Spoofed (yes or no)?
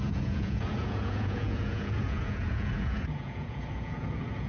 yes